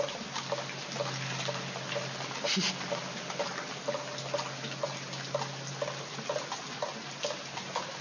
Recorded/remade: recorded